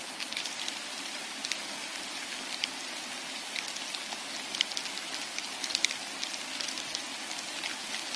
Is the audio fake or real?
real